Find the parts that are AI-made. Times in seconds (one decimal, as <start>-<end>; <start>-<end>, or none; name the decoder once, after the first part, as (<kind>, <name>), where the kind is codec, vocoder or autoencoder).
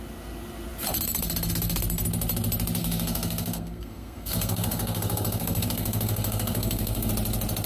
2.8-7.1 (codec, SNAC)